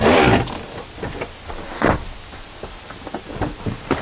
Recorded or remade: recorded